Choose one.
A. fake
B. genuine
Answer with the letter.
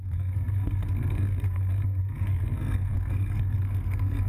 A